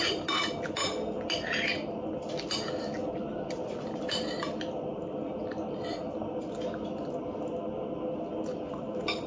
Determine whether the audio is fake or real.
real